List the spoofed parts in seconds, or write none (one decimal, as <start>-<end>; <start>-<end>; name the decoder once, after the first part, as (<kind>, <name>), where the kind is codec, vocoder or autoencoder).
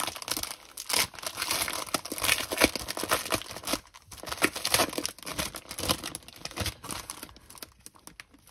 5.3-6.1 (vocoder, BigVGAN v2)